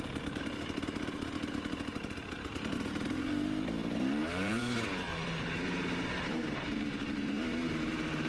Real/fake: fake